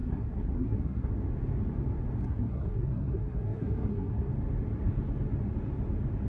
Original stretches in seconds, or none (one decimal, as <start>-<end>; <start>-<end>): 1.1-2.2; 4.3-6.3